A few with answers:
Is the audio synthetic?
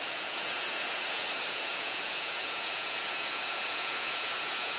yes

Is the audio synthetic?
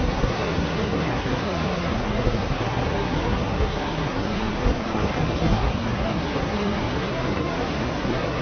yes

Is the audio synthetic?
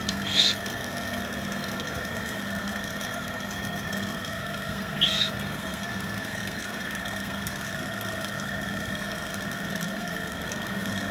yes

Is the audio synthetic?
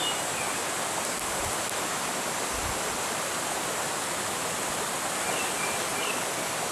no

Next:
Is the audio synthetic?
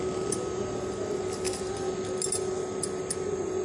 no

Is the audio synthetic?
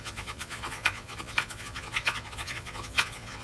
yes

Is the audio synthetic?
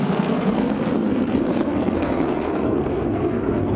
yes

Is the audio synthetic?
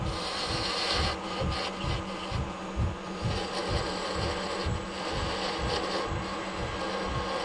no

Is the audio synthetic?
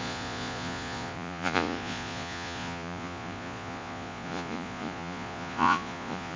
yes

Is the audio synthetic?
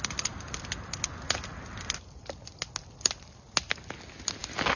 no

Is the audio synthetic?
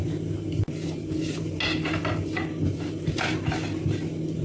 no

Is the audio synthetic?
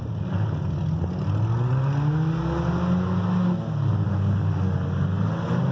no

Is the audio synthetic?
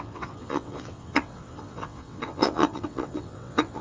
yes